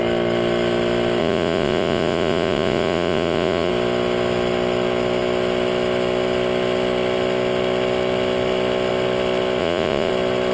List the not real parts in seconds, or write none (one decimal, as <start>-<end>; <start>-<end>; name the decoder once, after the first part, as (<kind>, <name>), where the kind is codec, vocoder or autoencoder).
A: 1.2-3.7 (vocoder, Vocos); 9.6-10.1